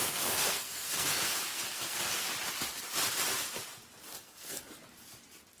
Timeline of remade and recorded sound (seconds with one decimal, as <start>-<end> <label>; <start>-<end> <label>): 0.0-2.3 remade; 2.3-4.1 recorded; 4.1-4.6 remade; 4.6-5.6 recorded